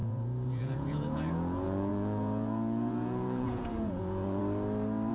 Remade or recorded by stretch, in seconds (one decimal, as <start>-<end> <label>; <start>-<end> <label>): 0.0-4.4 remade; 4.4-5.1 recorded